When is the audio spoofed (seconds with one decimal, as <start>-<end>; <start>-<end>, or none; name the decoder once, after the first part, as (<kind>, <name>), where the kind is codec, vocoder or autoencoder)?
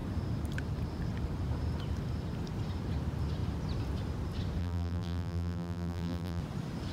4.6-6.4 (vocoder, BigVGAN v2)